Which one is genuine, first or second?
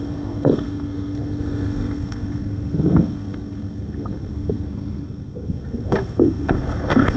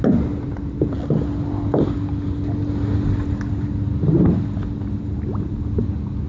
second